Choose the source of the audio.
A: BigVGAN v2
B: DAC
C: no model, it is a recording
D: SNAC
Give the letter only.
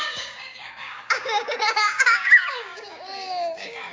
B